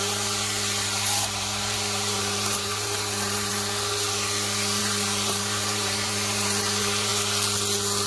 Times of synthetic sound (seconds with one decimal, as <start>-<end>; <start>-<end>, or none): 0.0-3.5; 4.8-7.1